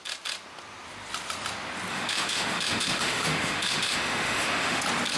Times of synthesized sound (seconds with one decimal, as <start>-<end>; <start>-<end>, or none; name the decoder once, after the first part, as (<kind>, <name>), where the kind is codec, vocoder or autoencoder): 1.9-4.8 (autoencoder, DAC-VAE)

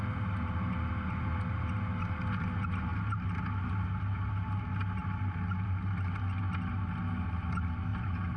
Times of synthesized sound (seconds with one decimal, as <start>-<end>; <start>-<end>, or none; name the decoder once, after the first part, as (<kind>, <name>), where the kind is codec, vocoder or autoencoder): 5.0-5.9 (vocoder, BigVGAN v2); 7.9-8.4

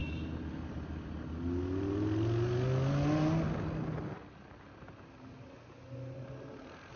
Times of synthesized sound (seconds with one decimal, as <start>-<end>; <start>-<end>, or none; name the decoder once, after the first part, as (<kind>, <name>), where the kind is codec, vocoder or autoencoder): none